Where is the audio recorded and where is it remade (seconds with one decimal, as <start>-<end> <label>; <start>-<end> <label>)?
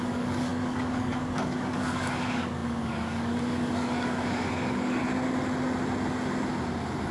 0.0-5.0 remade; 5.0-7.1 recorded